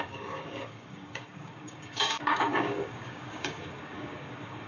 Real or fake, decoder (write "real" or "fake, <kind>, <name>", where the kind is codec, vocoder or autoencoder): fake, codec, DAC